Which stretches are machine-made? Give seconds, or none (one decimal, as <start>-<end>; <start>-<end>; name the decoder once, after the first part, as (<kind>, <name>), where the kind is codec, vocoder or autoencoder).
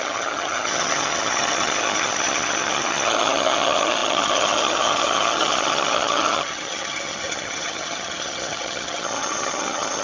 0.0-10.0 (vocoder, HiFi-GAN)